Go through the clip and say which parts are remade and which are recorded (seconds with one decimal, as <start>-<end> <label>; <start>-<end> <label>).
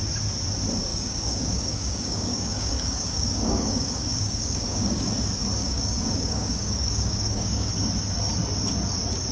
0.0-0.9 recorded; 0.9-5.1 remade; 5.1-5.6 recorded; 5.6-7.7 remade; 7.7-9.3 recorded